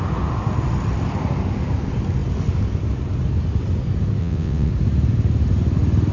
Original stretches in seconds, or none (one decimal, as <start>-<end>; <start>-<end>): 0.0-4.2; 4.7-6.1